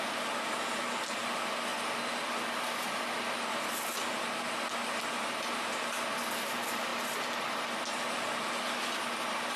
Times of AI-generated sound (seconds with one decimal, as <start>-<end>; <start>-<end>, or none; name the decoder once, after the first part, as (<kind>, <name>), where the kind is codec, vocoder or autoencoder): none